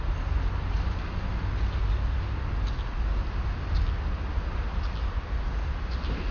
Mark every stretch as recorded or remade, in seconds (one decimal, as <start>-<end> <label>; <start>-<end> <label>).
0.0-6.3 recorded